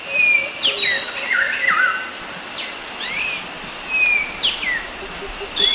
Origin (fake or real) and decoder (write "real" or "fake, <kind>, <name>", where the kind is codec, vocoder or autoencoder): real